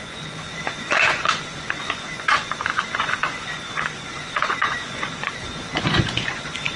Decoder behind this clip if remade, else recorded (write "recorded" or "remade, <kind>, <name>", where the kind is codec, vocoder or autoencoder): remade, vocoder, Vocos